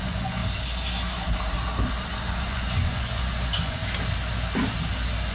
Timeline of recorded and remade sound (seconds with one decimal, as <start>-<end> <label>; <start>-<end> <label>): 0.0-0.4 remade; 0.4-2.4 recorded; 2.4-3.8 remade; 3.8-5.3 recorded